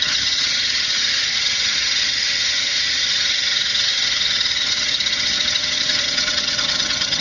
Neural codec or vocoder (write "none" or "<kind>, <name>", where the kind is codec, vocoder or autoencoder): vocoder, HiFi-GAN